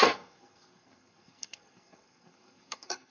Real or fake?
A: fake